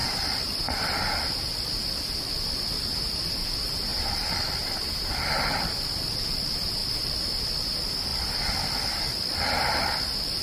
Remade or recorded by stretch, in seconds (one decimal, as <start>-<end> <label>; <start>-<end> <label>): 0.0-10.4 recorded